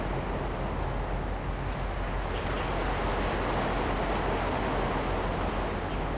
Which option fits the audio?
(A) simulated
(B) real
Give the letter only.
B